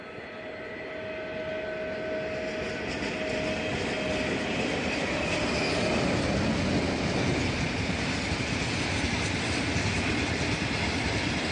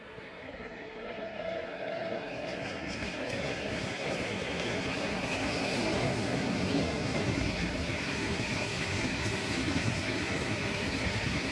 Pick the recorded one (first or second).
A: first